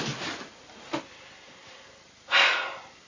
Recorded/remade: recorded